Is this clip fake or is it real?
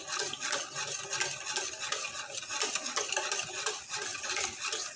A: real